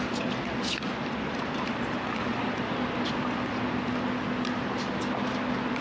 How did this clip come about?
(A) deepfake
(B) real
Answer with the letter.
B